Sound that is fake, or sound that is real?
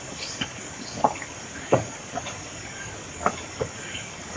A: fake